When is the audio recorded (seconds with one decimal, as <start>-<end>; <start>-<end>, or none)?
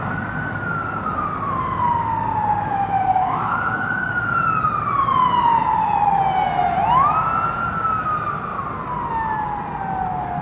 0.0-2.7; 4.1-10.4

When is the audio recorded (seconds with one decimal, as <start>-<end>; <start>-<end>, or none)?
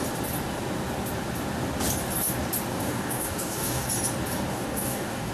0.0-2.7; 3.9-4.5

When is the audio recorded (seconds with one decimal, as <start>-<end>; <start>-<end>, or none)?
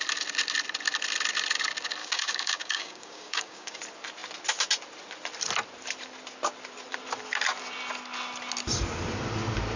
0.0-2.0; 3.8-9.8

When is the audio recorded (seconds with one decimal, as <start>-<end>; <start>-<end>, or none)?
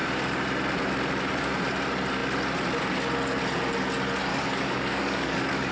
0.0-4.3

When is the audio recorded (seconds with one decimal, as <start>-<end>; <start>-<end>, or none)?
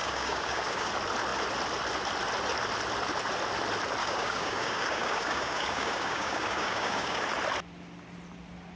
0.9-4.0; 7.2-8.8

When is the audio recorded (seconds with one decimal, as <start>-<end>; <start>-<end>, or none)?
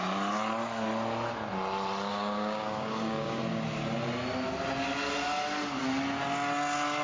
0.0-2.1; 3.4-7.0